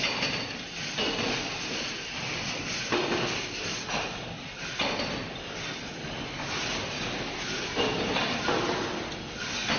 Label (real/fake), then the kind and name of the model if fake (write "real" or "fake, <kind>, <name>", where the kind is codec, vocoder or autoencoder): real